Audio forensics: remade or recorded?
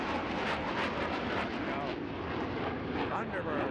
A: recorded